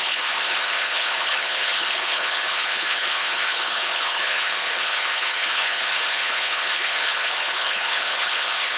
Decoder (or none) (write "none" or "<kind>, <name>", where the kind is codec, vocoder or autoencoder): codec, HILCodec